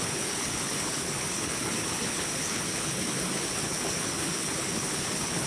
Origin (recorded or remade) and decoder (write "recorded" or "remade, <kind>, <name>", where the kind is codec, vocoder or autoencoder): remade, codec, HILCodec